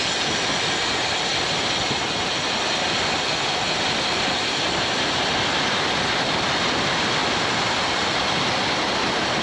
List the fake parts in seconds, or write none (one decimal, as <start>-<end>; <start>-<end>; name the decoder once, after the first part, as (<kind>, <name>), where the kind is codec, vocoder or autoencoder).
7.2-8.7 (vocoder, BigVGAN v2)